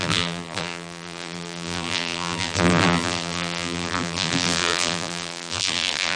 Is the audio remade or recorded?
remade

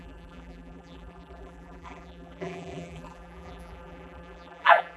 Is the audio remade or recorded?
remade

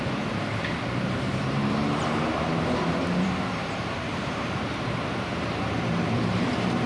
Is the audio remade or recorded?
remade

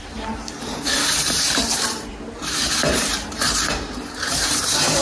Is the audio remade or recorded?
remade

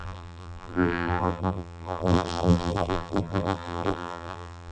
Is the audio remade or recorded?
remade